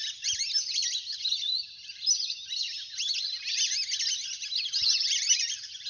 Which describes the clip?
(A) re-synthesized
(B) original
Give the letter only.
B